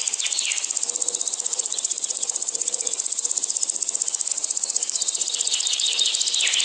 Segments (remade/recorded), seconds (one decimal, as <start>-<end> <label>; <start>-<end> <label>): 0.0-1.5 recorded; 1.5-3.3 remade; 3.3-4.3 recorded; 4.3-6.1 remade; 6.1-6.6 recorded